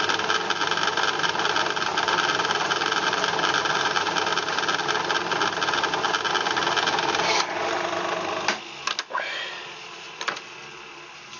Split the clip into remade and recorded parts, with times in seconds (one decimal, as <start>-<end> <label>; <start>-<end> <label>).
0.0-1.9 recorded; 1.9-4.2 remade; 4.2-11.4 recorded